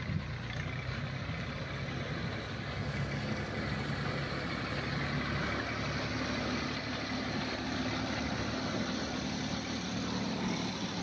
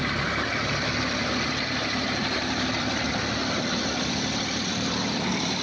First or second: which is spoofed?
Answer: second